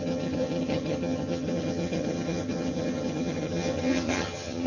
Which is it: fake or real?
fake